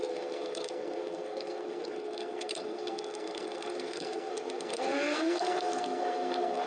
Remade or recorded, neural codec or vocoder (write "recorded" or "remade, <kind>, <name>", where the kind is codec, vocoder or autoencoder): remade, codec, SNAC